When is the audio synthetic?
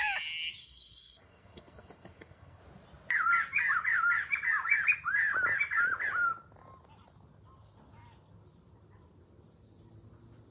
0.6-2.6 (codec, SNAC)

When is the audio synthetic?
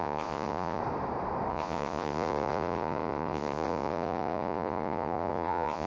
0.0-0.8 (vocoder, Vocos); 1.5-5.9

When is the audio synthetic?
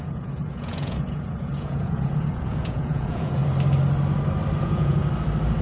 0.0-3.4 (vocoder, Vocos); 4.6-5.0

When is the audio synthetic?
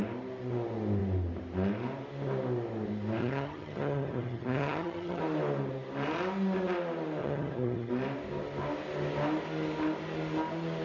3.2-5.2 (vocoder, HiFi-GAN); 7.2-7.9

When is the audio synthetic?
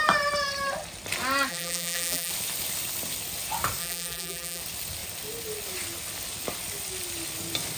1.5-2.3 (vocoder, BigVGAN v2); 3.8-4.6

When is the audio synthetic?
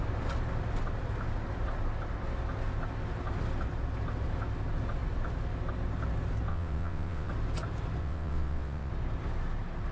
6.5-7.3 (vocoder, WaveNeXt); 8.0-8.9